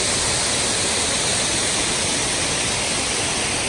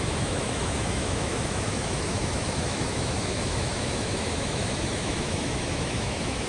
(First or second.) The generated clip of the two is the second